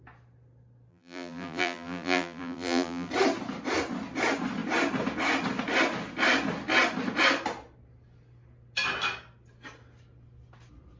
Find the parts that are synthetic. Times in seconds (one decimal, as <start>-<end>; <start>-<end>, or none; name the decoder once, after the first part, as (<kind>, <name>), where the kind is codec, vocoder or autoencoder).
0.9-3.1 (vocoder, BigVGAN v2)